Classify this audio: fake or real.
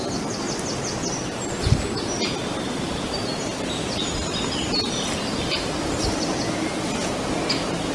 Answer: real